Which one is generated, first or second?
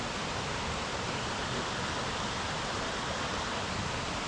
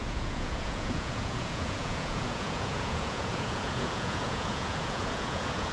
second